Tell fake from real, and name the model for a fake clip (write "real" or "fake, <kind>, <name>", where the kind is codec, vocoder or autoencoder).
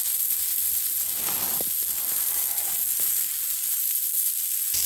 real